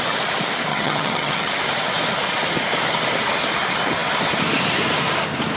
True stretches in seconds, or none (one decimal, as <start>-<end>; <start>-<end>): 0.0-0.7; 1.5-5.6